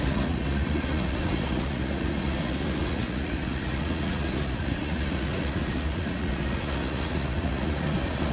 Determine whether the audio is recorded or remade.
remade